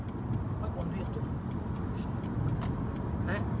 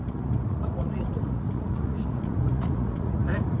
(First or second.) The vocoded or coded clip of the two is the second